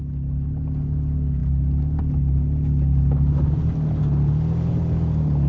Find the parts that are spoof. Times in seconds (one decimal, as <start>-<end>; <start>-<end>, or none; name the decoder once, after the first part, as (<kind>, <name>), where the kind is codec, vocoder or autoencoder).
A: none